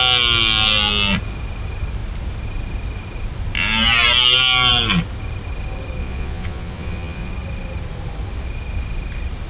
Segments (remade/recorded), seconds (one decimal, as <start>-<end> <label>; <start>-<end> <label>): 0.0-6.0 recorded; 6.0-7.3 remade; 7.3-9.5 recorded